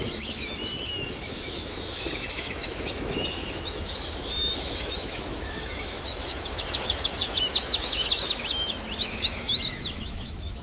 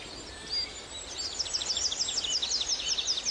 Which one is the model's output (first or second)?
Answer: first